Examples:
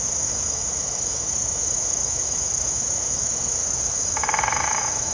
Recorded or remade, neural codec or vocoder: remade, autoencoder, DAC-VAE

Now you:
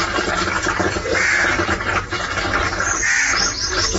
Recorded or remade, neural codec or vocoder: recorded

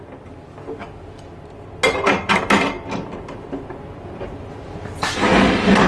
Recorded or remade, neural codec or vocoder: recorded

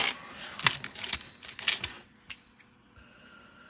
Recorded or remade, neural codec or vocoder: recorded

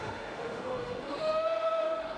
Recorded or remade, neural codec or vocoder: remade, autoencoder, DAC-VAE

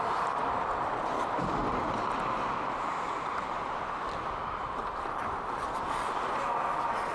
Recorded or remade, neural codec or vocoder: recorded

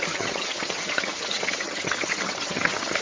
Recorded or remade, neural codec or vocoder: remade, vocoder, HiFi-GAN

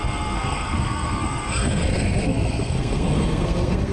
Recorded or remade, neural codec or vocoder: remade, codec, SNAC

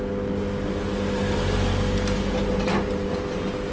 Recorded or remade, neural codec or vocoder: recorded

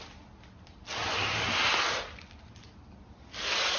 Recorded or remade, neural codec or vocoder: recorded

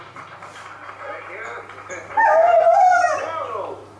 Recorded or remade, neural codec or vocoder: recorded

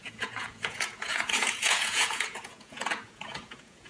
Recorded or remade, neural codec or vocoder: remade, vocoder, Vocos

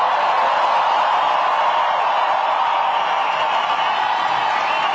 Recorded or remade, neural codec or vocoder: recorded